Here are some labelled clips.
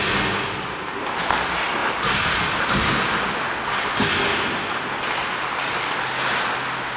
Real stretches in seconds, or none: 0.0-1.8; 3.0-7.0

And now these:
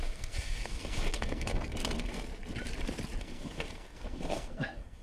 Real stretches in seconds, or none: 2.3-3.2

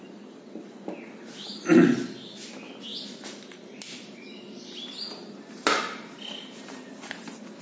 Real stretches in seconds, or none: 0.0-7.6

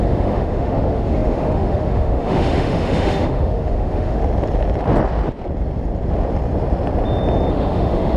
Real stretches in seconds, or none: 4.2-7.5